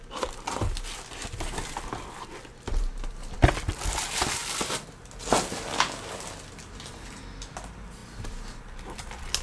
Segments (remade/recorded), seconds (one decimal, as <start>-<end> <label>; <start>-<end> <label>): 0.0-9.4 recorded